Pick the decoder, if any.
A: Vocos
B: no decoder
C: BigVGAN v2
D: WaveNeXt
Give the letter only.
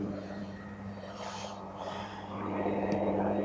C